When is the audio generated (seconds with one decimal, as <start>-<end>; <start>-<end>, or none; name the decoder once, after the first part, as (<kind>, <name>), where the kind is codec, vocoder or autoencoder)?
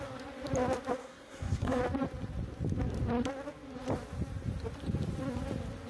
1.0-1.8 (codec, SNAC)